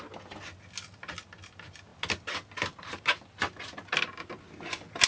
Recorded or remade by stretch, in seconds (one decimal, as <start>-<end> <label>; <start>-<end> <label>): 0.0-5.1 recorded

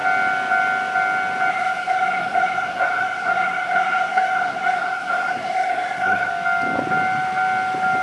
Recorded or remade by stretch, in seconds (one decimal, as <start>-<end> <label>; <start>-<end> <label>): 0.0-1.5 recorded; 1.5-6.3 remade; 6.3-8.0 recorded

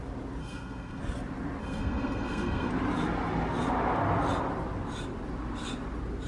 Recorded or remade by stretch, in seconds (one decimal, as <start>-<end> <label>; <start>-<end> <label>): 0.0-0.4 recorded; 0.4-1.0 remade; 1.0-1.6 recorded; 1.6-2.7 remade; 2.7-6.3 recorded

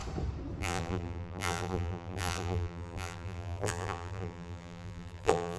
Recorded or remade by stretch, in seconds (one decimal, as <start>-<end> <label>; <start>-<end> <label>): 0.0-0.6 recorded; 0.6-5.6 remade

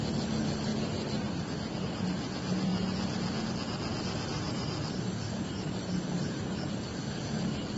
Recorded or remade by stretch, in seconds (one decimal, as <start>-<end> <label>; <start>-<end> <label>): 0.0-4.3 recorded; 4.3-5.9 remade; 5.9-7.8 recorded

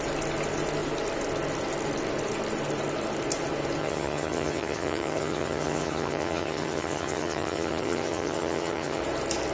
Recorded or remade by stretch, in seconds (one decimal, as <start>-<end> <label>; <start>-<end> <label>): 0.0-3.8 recorded; 3.8-9.0 remade; 9.0-9.5 recorded

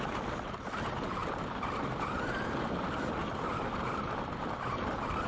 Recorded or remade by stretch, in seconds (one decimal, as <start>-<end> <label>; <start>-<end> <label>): 0.0-5.3 recorded

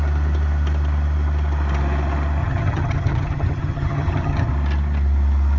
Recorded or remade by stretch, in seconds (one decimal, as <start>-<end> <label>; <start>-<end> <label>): 0.0-2.4 recorded; 2.4-4.5 remade; 4.5-5.6 recorded